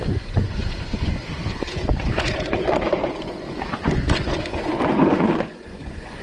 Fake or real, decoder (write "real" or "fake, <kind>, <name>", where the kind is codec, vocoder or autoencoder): fake, vocoder, Vocos